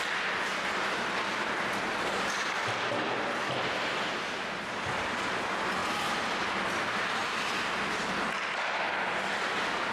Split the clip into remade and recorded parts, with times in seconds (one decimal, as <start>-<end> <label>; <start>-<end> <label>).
0.0-9.9 recorded